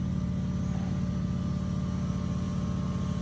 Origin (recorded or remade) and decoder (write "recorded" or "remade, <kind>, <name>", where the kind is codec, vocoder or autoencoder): recorded